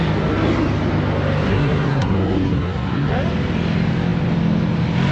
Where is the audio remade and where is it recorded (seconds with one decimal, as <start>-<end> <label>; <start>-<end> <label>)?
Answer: 0.0-1.5 recorded; 1.5-3.1 remade; 3.1-5.1 recorded